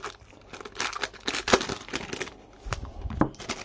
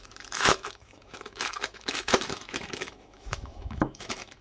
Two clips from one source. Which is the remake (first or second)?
second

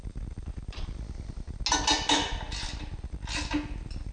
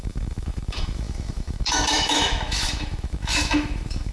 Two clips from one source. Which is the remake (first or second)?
second